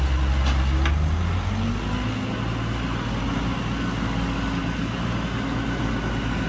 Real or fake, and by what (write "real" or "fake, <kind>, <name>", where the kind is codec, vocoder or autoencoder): real